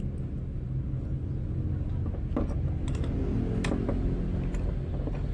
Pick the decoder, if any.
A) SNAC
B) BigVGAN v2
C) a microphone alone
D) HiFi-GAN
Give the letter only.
C